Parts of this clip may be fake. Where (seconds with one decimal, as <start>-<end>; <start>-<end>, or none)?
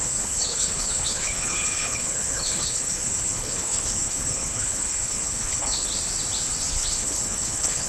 0.0-5.9; 6.7-7.9